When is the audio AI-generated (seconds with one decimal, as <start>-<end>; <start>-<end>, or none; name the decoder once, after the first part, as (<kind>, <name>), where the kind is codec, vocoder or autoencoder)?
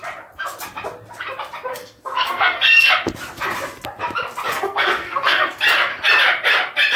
1.7-2.9 (codec, SNAC); 4.5-5.6